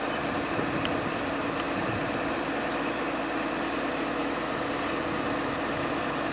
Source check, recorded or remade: recorded